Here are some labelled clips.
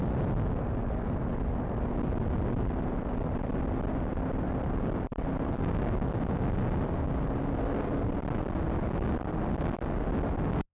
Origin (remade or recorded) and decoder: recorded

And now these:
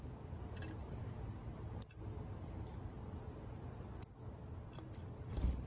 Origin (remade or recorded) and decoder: recorded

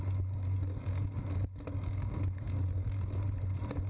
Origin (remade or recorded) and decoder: recorded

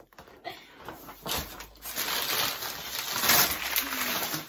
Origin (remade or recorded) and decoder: recorded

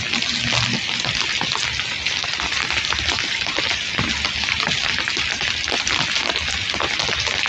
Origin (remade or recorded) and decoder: recorded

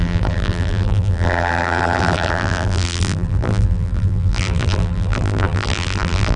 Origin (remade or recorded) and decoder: remade, vocoder, BigVGAN v2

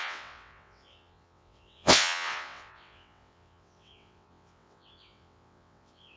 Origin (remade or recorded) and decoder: remade, vocoder, WaveNeXt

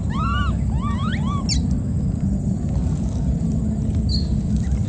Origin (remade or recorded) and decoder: recorded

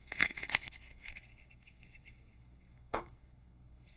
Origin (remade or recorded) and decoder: remade, codec, SNAC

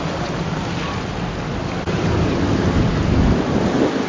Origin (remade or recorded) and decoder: recorded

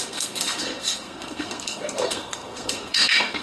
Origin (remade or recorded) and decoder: remade, codec, SNAC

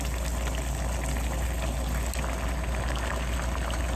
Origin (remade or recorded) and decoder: recorded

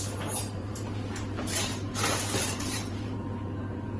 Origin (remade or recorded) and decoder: remade, vocoder, BigVGAN v2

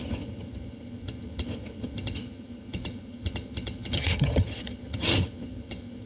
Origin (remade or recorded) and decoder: remade, vocoder, HiFi-GAN